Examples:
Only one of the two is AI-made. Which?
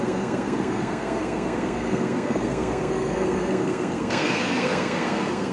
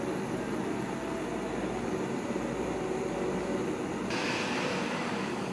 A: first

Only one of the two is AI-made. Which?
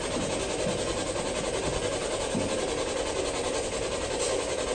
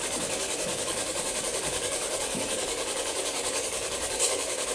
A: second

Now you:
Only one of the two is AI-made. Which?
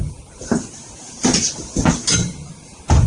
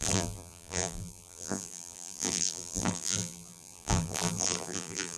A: second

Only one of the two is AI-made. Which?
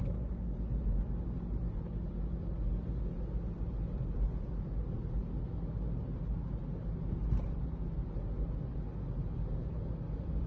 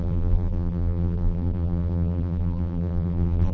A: second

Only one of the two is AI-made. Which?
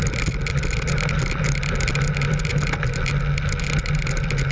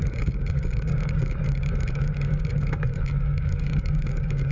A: second